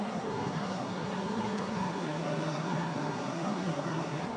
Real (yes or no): no